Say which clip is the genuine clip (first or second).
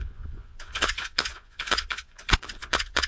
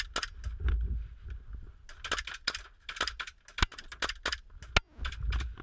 second